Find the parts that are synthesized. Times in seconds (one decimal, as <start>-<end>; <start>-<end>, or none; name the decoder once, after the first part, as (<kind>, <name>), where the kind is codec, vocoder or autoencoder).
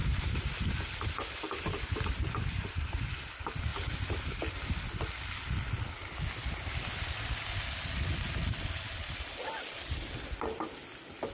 none